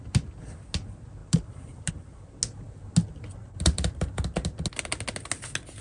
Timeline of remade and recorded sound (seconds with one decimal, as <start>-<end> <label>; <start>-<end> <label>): 0.0-1.2 recorded; 1.2-1.9 remade; 1.9-3.4 recorded; 3.4-4.2 remade; 4.2-5.8 recorded